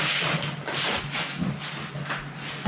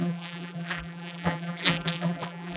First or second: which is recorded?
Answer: first